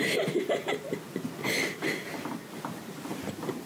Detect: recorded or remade recorded